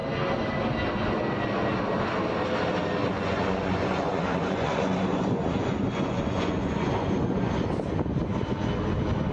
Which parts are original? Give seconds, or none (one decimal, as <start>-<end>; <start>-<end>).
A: 0.0-3.0; 7.5-9.3